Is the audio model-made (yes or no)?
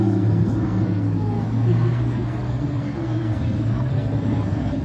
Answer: yes